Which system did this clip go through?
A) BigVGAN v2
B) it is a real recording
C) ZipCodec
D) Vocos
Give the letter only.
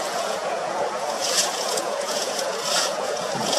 D